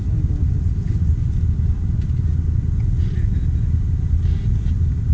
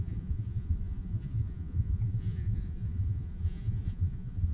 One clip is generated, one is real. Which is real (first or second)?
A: first